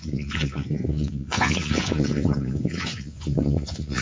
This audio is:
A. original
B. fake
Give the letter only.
B